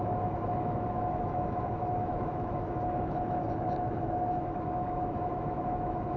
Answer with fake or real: fake